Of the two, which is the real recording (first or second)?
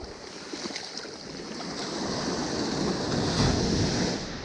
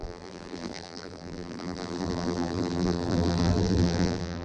first